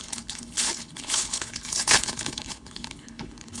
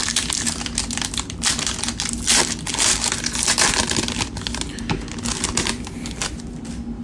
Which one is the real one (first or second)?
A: second